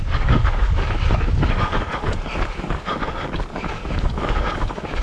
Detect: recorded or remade remade